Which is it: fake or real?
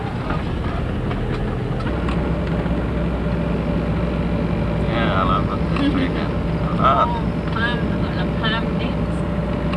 real